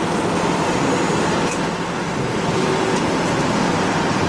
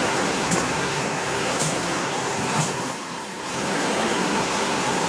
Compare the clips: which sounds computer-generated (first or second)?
second